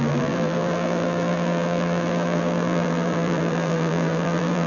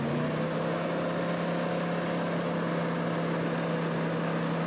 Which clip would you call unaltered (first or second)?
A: second